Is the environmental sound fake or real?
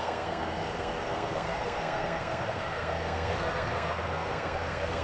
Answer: fake